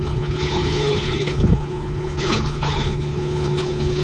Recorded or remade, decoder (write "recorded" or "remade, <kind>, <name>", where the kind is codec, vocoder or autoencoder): remade, codec, HILCodec